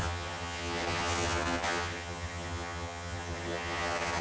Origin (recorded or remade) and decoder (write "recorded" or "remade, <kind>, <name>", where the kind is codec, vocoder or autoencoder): remade, vocoder, HiFi-GAN